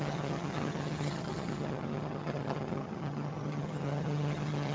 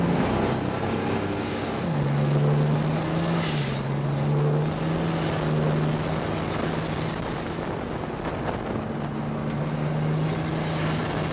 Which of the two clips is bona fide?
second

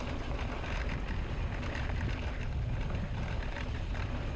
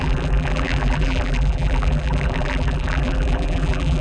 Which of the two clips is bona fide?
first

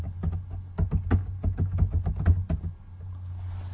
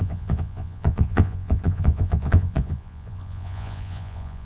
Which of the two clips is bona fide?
first